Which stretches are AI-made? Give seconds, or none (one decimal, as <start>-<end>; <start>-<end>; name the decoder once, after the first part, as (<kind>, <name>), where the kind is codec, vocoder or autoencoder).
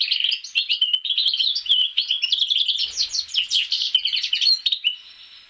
none